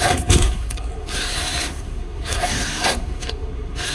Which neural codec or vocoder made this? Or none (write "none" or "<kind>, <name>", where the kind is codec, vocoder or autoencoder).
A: codec, SNAC